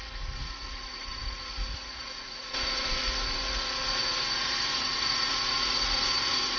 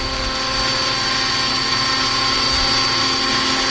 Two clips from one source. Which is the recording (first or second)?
second